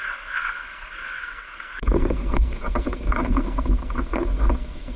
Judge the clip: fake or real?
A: fake